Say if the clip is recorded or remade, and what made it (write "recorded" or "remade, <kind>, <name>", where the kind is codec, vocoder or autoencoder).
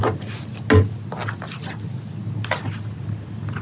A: recorded